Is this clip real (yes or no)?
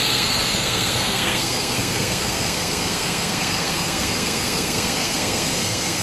no